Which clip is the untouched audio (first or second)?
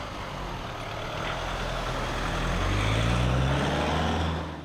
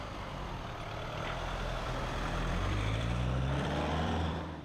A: first